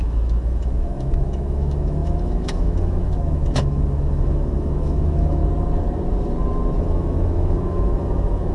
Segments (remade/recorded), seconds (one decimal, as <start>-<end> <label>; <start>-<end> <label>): 0.0-5.4 remade; 5.4-6.8 recorded; 6.8-8.5 remade